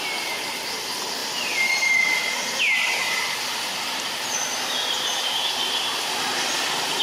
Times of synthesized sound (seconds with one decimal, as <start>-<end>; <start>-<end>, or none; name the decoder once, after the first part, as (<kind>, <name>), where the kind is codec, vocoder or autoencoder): 1.2-5.4 (vocoder, BigVGAN v2)